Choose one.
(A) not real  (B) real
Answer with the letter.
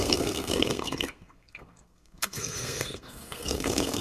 A